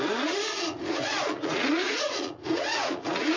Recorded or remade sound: remade